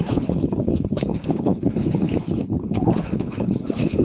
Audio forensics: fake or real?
fake